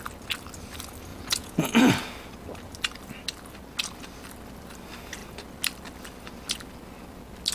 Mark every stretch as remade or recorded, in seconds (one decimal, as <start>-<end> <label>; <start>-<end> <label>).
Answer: 0.0-1.1 recorded; 1.1-1.9 remade; 1.9-7.5 recorded